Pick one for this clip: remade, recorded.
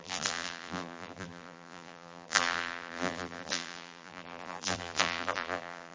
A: remade